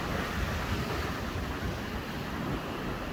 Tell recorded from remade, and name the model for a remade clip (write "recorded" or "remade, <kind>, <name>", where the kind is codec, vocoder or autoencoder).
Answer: recorded